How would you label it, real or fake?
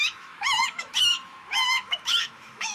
fake